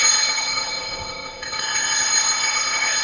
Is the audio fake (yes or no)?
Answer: yes